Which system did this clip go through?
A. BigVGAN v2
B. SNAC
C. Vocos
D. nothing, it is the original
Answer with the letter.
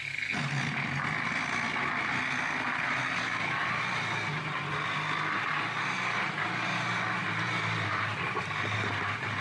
D